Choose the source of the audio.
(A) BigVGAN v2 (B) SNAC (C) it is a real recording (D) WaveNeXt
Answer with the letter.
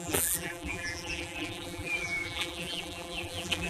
A